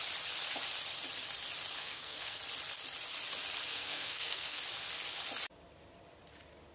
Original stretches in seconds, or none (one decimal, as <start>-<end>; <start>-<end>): 0.0-1.8; 2.4-3.7; 4.6-6.7